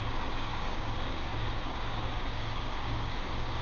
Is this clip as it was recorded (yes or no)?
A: no